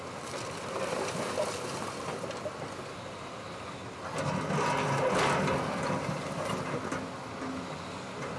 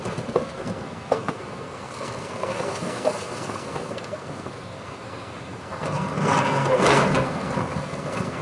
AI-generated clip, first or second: second